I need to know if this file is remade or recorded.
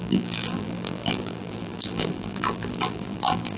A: remade